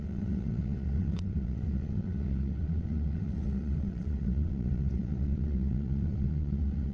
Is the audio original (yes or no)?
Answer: no